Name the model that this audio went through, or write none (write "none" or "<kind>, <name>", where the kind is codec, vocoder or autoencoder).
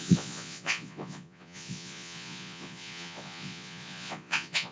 vocoder, Vocos